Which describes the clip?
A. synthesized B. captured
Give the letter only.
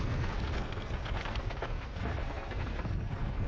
A